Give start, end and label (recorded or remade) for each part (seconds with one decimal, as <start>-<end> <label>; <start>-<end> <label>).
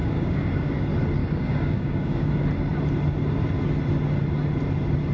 0.0-0.7 remade; 0.7-1.2 recorded; 1.2-2.3 remade; 2.3-5.1 recorded